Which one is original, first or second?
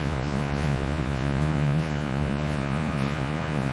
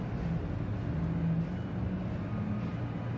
second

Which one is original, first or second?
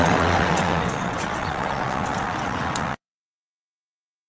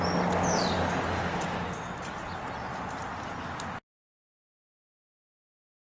second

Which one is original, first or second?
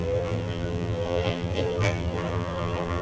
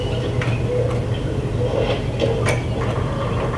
second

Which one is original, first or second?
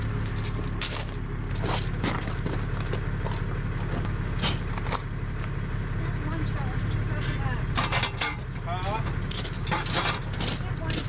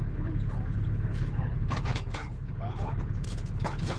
first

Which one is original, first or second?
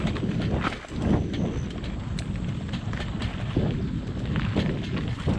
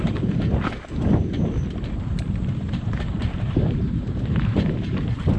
first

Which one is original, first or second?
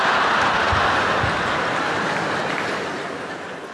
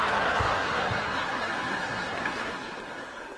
first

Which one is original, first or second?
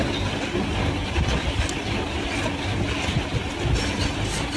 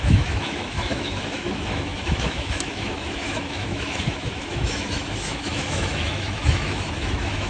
first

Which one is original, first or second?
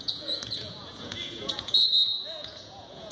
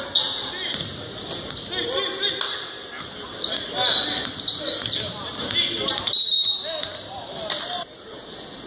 second